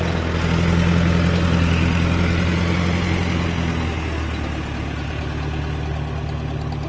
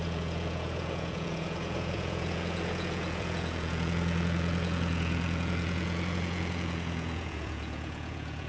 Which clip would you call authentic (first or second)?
first